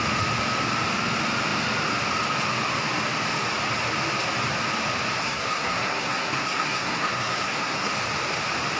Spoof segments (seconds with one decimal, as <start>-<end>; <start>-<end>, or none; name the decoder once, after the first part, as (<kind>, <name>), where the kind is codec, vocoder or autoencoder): 5.2-7.9 (codec, SNAC)